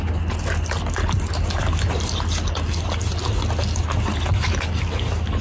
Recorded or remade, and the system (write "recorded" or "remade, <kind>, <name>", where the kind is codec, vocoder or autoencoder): recorded